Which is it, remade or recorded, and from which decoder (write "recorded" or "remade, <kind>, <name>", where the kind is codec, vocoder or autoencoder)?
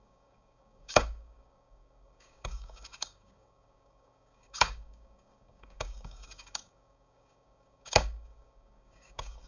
remade, codec, DAC